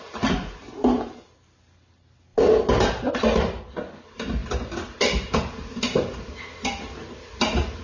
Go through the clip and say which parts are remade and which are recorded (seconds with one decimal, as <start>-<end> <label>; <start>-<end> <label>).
0.0-7.8 recorded